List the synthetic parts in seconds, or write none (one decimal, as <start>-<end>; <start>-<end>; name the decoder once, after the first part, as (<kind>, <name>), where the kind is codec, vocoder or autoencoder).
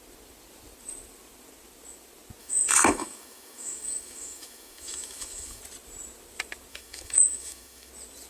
2.4-5.6 (autoencoder, DAC-VAE); 6.7-7.9